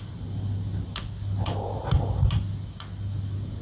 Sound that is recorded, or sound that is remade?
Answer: recorded